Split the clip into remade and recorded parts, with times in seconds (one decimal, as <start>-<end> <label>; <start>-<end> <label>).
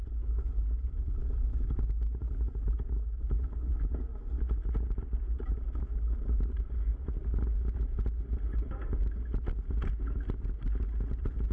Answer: 0.0-11.5 recorded